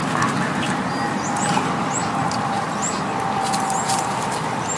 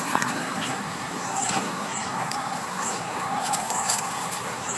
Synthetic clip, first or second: second